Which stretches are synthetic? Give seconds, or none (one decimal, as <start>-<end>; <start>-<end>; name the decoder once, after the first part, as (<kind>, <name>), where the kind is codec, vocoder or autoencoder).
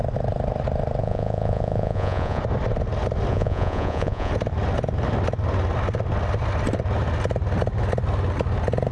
1.0-2.4 (vocoder, Vocos); 3.3-4.3